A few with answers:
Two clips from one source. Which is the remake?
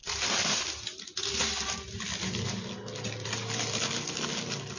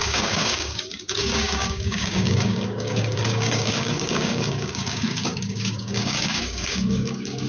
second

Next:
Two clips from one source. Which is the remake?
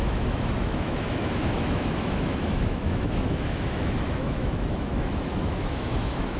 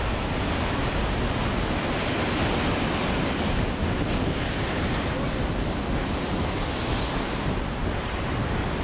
first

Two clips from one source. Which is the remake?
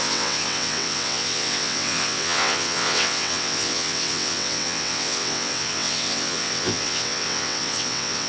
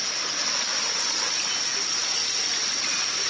first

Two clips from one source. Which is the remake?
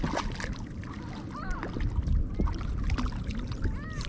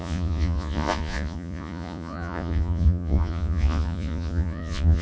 second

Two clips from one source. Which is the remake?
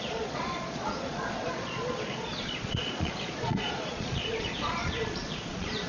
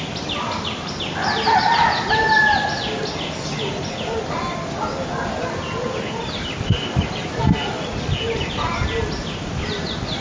first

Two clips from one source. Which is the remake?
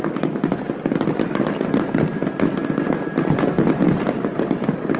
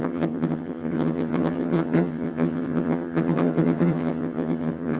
second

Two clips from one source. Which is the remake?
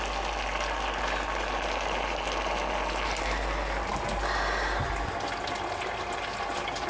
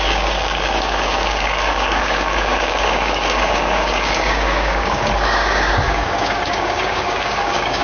second